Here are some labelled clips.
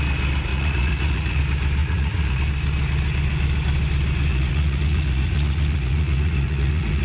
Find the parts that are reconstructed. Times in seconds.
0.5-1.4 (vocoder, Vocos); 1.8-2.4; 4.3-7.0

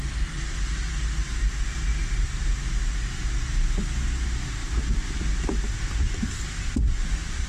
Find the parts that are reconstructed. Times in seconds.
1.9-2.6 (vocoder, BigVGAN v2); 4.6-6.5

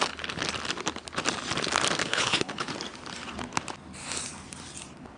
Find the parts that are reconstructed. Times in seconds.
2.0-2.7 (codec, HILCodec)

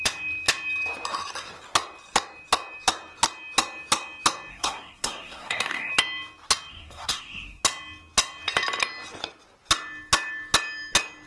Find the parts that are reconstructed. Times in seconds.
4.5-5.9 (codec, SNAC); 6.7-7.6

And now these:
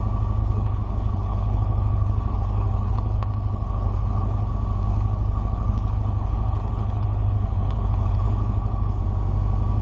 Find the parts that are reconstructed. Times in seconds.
0.4-4.5 (codec, HILCodec); 4.9-9.0